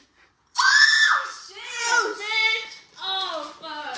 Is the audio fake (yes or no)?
no